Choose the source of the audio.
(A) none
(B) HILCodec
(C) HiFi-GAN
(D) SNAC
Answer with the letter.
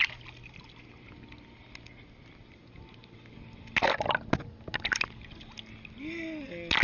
A